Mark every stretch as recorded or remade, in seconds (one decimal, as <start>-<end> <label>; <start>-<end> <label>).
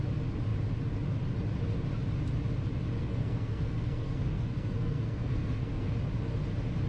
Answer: 0.0-3.0 recorded; 3.0-5.9 remade; 5.9-6.9 recorded